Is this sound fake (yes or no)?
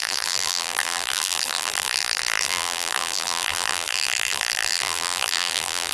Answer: yes